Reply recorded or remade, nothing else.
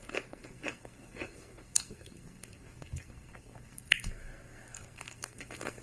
remade